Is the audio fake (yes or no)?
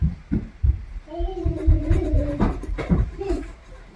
yes